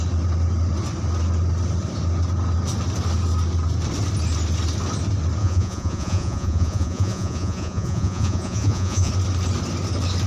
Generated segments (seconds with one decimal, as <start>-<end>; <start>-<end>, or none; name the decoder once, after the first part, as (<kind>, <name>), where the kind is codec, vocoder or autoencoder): 5.4-9.1 (vocoder, Vocos)